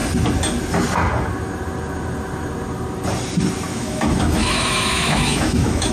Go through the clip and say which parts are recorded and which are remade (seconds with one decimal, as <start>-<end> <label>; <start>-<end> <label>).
0.0-3.7 recorded; 3.7-5.9 remade